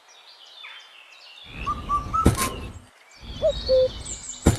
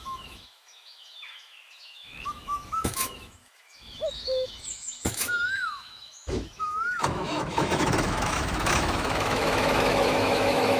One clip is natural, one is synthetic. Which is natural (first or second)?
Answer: first